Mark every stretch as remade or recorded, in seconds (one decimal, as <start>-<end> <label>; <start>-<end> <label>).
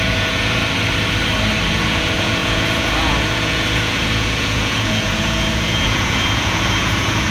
0.0-0.6 remade; 0.6-1.7 recorded; 1.7-7.3 remade